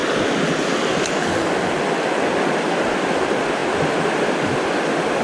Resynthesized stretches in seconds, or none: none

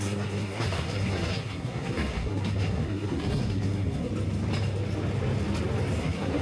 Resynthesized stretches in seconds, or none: 0.0-4.1 (codec, SNAC); 6.0-6.4

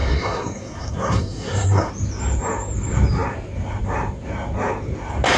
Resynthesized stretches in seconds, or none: 0.0-1.9 (codec, SNAC)

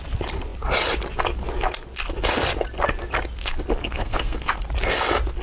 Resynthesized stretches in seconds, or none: 3.8-4.6 (codec, SNAC)

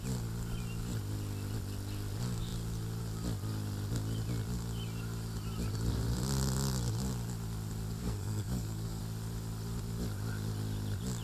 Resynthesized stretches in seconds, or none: 8.0-9.0 (codec, SNAC)